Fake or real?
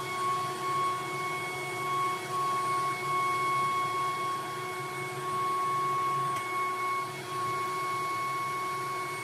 real